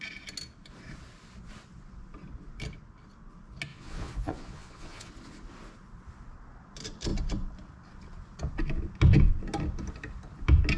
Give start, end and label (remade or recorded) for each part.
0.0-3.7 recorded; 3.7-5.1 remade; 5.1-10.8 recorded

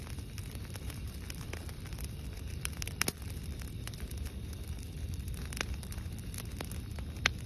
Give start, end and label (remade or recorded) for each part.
0.0-1.0 recorded; 1.0-5.3 remade; 5.3-7.5 recorded